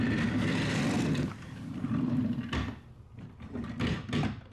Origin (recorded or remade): recorded